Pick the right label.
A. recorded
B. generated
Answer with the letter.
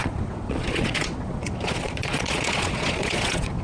B